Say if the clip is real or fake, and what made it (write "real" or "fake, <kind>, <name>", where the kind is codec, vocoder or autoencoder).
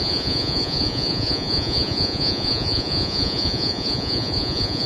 fake, vocoder, Vocos